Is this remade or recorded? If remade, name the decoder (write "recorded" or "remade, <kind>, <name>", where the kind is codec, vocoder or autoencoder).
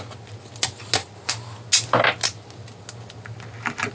recorded